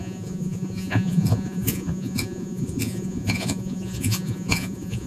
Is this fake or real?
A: fake